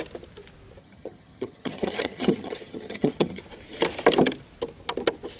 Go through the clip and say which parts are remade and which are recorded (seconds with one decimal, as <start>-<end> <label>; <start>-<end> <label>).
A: 0.0-0.8 recorded; 0.8-3.4 remade; 3.4-5.4 recorded